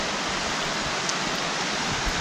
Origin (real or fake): real